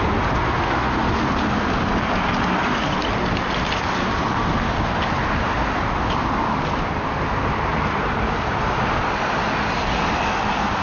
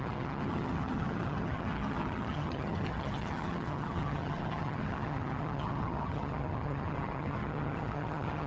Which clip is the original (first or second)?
first